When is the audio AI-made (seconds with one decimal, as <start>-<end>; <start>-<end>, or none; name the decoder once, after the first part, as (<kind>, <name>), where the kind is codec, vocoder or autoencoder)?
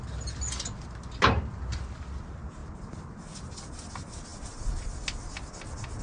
none